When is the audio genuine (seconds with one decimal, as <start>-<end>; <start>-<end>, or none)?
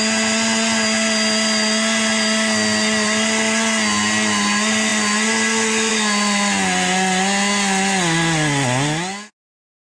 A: 0.0-9.9